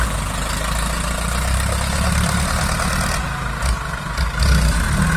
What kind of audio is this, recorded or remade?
recorded